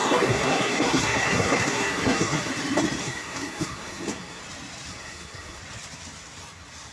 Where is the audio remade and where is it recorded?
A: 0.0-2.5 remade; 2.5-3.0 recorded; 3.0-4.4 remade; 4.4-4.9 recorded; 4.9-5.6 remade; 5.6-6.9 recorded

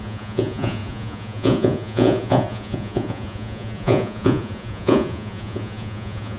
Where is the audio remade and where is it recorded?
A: 0.0-6.4 remade

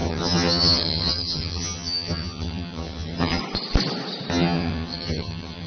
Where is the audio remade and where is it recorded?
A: 0.0-3.4 remade; 3.4-4.3 recorded; 4.3-5.7 remade

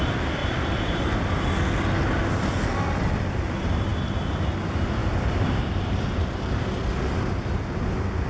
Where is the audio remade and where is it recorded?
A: 0.0-0.4 recorded; 0.4-1.3 remade; 1.3-5.0 recorded; 5.0-7.2 remade; 7.2-8.3 recorded